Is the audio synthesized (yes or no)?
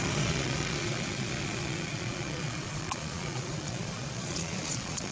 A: yes